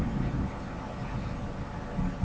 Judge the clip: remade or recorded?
recorded